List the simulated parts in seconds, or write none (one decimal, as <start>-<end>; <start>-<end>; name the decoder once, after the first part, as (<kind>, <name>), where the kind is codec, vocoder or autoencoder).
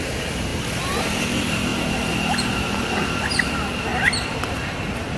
0.0-0.5 (vocoder, BigVGAN v2); 1.0-1.7; 3.0-5.2